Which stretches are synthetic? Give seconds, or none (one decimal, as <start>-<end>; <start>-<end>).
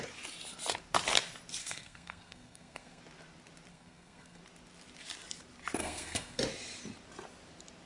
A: 1.6-3.0; 3.7-4.4; 5.8-6.4